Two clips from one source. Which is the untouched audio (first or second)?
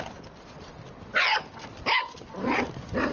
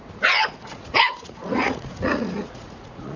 first